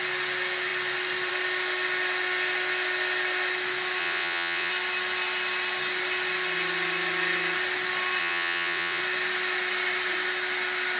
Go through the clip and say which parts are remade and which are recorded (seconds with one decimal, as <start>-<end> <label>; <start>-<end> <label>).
0.0-4.0 recorded; 4.0-4.7 remade; 4.7-8.2 recorded; 8.2-9.0 remade; 9.0-11.0 recorded

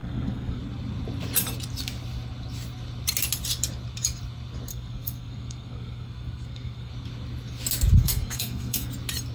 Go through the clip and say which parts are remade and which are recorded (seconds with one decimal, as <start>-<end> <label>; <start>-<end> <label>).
0.0-0.6 remade; 0.6-4.7 recorded; 4.7-6.9 remade; 6.9-8.0 recorded; 8.0-8.9 remade; 8.9-9.3 recorded

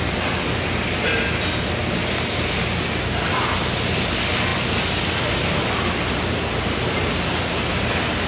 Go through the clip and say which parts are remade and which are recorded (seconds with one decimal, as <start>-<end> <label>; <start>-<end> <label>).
0.0-8.3 recorded